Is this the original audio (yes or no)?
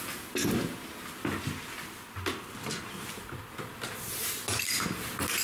yes